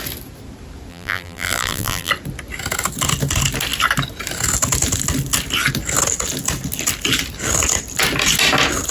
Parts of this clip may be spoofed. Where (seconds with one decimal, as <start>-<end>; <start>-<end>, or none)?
0.9-2.1